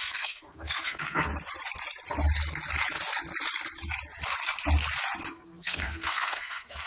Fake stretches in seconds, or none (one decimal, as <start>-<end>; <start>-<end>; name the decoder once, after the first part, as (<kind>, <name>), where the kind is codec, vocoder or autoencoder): 0.0-1.3 (codec, SNAC); 5.3-6.9